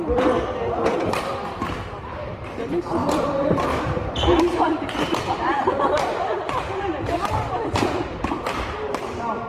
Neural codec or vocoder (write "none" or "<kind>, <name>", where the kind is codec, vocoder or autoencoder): vocoder, BigVGAN v2